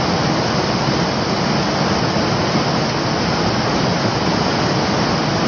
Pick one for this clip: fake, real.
real